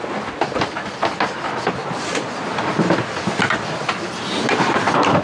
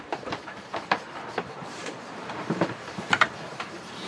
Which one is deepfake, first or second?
second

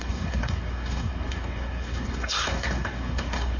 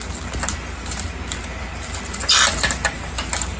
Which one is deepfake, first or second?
first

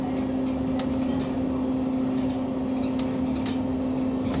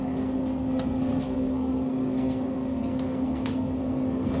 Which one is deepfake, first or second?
second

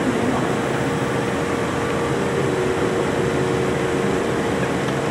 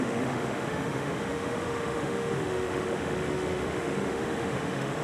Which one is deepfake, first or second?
second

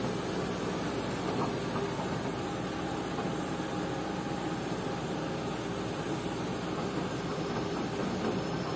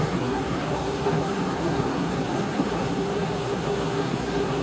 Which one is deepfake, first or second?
second